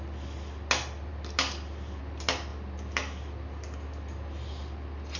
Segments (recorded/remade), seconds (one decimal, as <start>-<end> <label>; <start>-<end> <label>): 0.0-5.2 recorded